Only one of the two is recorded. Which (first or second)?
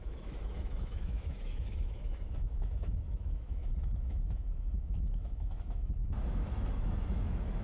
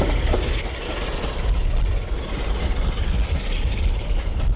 second